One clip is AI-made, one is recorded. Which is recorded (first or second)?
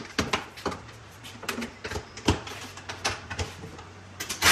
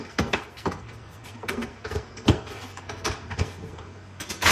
first